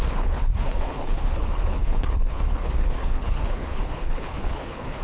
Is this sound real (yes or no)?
no